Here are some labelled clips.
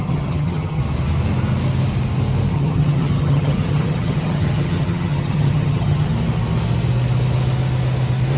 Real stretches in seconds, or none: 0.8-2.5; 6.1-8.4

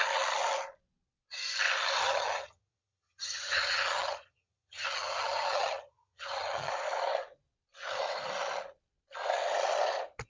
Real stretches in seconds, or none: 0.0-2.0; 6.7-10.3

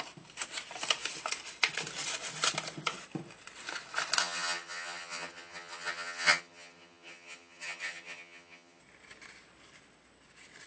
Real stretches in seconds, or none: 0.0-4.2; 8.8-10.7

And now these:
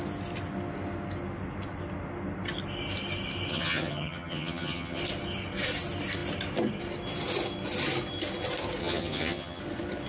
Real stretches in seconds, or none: 0.0-3.5; 5.0-8.8; 9.6-10.1